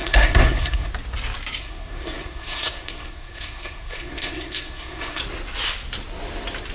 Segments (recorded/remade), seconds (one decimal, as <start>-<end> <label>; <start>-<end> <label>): 0.0-0.9 remade; 0.9-1.6 recorded; 1.6-5.2 remade; 5.2-6.7 recorded